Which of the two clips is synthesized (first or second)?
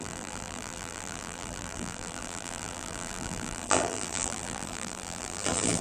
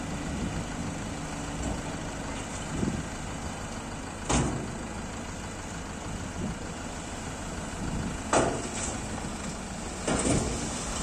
first